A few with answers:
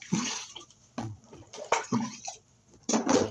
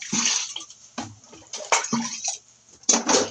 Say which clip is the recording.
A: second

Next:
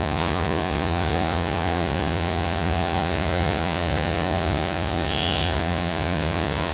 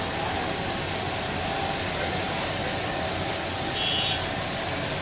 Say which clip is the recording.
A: second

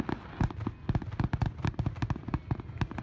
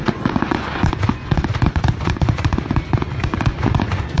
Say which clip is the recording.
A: first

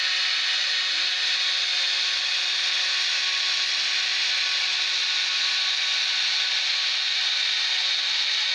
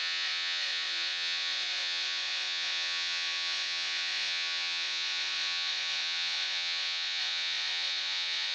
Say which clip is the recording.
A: first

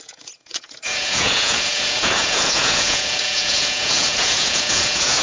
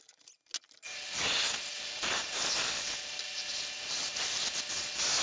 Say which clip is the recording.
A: second